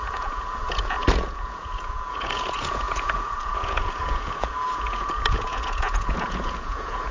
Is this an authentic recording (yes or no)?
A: no